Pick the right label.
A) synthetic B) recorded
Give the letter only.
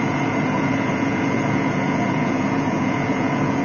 A